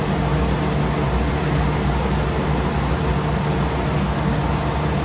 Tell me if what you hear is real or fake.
real